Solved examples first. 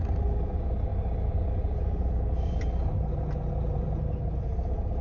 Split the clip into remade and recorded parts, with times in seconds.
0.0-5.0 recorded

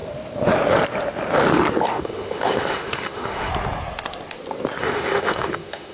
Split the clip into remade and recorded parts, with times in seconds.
0.0-1.9 recorded; 1.9-3.5 remade; 3.5-4.8 recorded; 4.8-5.9 remade

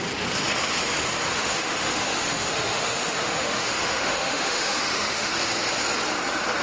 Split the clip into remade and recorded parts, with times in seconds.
0.0-1.3 recorded; 1.3-5.3 remade; 5.3-6.6 recorded

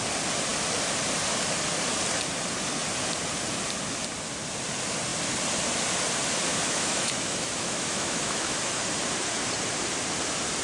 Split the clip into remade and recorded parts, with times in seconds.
0.0-6.5 recorded; 6.5-8.6 remade; 8.6-10.6 recorded

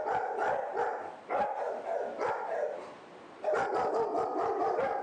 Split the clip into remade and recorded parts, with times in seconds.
0.0-5.0 recorded

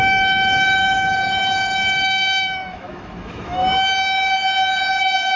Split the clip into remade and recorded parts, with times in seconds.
0.0-3.6 remade; 3.6-5.0 recorded; 5.0-5.4 remade

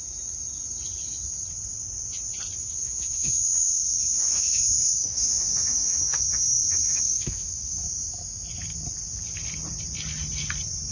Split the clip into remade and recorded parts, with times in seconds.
0.0-2.6 recorded; 2.6-7.8 remade; 7.8-10.9 recorded